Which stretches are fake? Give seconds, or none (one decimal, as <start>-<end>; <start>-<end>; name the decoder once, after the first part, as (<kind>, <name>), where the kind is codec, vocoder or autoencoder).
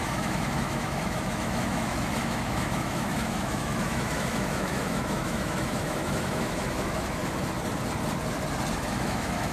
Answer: 0.0-7.2 (autoencoder, DAC-VAE); 8.9-9.5